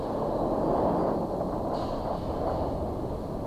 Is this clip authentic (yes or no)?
yes